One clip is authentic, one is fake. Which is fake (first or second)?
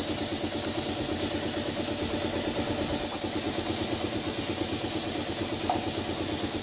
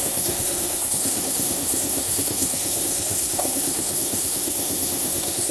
second